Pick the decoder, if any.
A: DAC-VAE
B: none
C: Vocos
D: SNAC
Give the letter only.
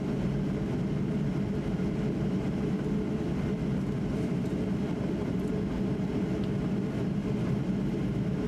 B